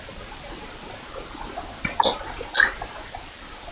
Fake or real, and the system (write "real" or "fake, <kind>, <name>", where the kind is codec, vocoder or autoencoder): real